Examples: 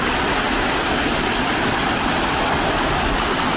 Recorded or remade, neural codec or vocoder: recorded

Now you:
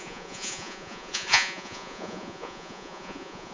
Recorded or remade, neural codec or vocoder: remade, vocoder, Vocos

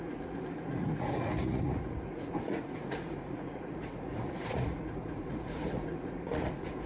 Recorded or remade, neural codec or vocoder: remade, vocoder, Vocos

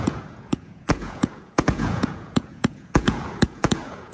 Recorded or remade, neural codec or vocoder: remade, vocoder, Vocos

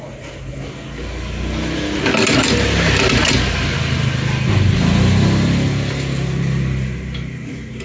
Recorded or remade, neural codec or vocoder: recorded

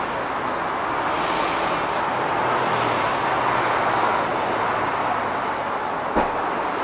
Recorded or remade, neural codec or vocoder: recorded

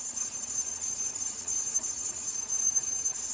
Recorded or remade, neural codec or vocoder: remade, vocoder, Vocos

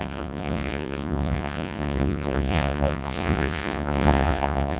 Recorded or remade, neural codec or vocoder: remade, vocoder, Vocos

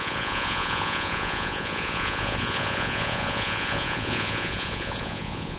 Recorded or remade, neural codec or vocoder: remade, vocoder, Vocos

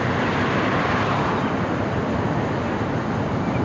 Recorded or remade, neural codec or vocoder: recorded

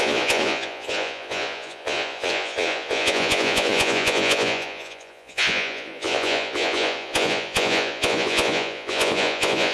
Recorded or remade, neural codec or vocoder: remade, vocoder, Vocos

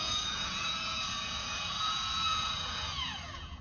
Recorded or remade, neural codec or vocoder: remade, vocoder, Vocos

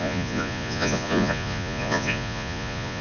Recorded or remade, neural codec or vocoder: remade, vocoder, Vocos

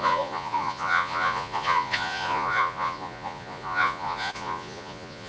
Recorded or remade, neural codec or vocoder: remade, vocoder, Vocos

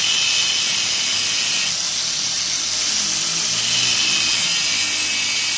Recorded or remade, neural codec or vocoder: recorded